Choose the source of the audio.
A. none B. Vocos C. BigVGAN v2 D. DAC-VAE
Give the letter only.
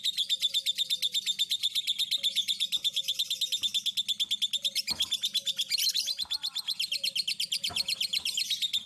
A